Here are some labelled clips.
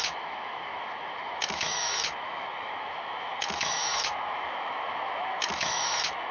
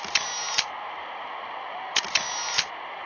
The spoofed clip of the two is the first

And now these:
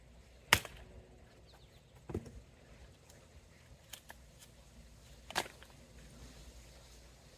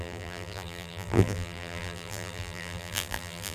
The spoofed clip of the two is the second